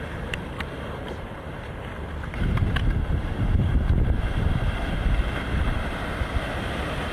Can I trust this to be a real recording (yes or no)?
no